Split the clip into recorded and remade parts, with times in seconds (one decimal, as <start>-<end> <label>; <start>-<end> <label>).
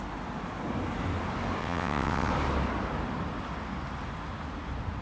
0.0-1.6 recorded; 1.6-2.3 remade; 2.3-5.0 recorded